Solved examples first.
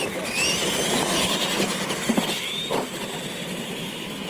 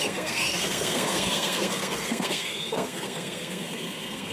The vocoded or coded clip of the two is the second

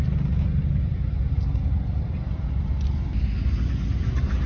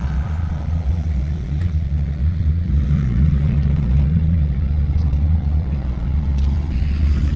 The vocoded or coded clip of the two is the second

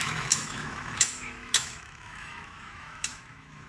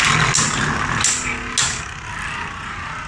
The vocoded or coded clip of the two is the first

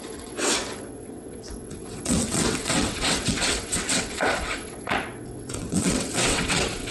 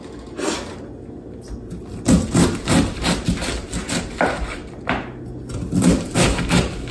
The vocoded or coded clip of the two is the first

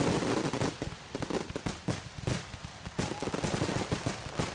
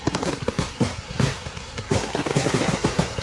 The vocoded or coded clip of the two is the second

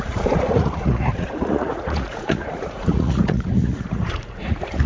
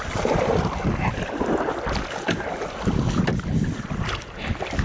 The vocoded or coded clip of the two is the first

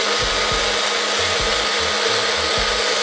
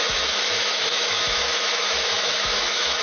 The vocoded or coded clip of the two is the second